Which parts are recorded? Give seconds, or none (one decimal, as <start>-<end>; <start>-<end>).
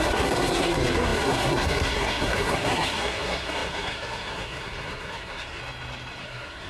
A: 5.6-6.2